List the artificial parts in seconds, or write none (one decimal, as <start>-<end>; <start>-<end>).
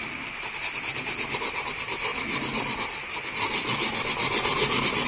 none